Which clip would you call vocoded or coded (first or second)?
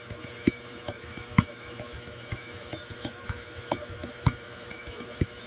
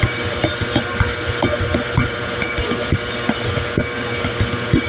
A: first